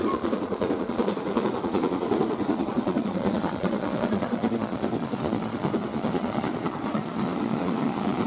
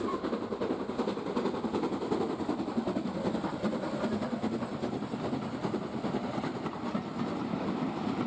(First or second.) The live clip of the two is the second